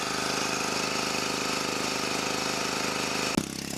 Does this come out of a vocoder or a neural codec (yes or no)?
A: no